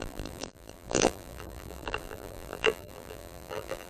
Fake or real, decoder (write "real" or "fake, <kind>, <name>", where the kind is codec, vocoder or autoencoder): fake, vocoder, BigVGAN v2